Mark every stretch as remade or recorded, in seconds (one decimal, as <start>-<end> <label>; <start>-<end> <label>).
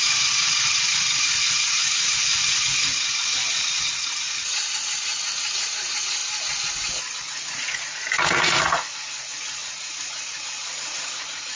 0.0-6.2 remade; 6.2-7.2 recorded; 7.2-9.6 remade; 9.6-10.1 recorded; 10.1-11.6 remade